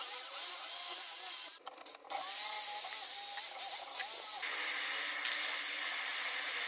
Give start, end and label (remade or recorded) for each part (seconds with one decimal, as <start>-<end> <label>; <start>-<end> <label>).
0.0-6.7 recorded